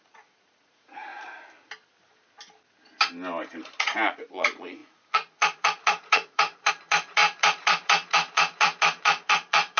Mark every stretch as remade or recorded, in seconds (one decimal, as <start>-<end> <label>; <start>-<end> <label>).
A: 0.0-1.1 remade; 1.1-3.8 recorded; 3.8-9.8 remade